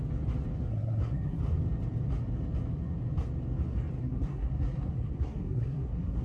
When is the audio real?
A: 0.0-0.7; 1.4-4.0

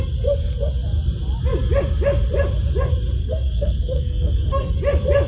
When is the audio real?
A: 0.0-3.2; 4.7-5.3

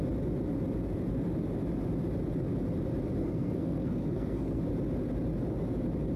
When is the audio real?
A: 0.0-3.2; 4.6-6.2

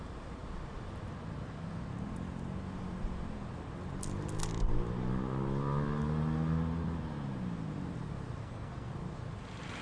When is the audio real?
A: 0.0-8.4; 8.9-9.8

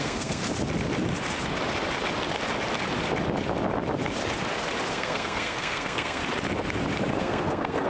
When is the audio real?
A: 0.4-4.9; 6.2-7.2

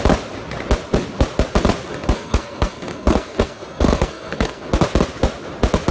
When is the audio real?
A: 0.0-1.9; 4.7-5.9

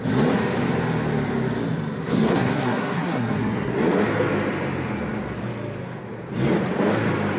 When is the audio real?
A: 0.0-2.0; 3.7-7.4

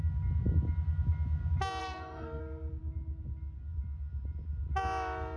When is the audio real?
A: 0.0-1.8; 2.4-5.4